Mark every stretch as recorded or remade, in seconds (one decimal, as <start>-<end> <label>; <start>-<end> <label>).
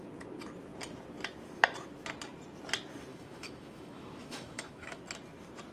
0.0-3.1 recorded; 3.1-5.0 remade; 5.0-5.7 recorded